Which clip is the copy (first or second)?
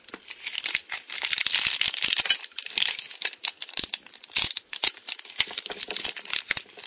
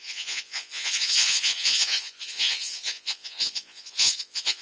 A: second